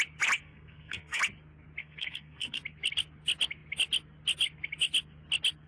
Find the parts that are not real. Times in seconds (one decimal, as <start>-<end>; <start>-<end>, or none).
0.4-1.2; 1.8-2.6